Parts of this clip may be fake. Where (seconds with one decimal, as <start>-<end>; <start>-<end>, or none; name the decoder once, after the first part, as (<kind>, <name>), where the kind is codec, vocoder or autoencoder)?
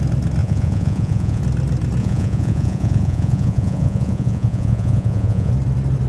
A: 0.4-1.4 (vocoder, Vocos); 2.0-5.5